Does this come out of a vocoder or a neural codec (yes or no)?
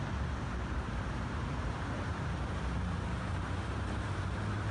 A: yes